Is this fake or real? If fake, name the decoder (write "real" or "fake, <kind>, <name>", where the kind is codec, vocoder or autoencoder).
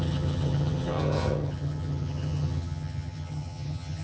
fake, vocoder, HiFi-GAN